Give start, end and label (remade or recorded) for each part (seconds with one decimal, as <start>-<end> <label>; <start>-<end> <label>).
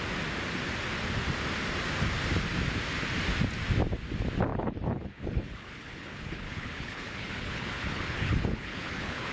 0.0-4.5 recorded; 4.5-9.3 remade